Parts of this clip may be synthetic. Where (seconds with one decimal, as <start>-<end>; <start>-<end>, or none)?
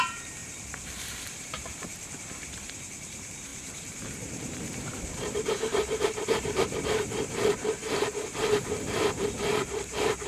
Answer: 0.0-10.3